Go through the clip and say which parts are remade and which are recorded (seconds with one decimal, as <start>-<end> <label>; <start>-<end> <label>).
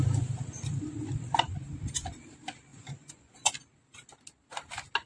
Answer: 0.0-2.7 recorded; 2.7-3.5 remade; 3.5-5.1 recorded